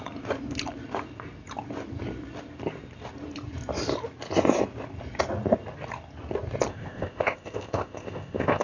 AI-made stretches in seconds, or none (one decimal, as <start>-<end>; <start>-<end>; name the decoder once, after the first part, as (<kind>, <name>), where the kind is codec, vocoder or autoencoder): 6.7-8.6 (codec, ZipCodec)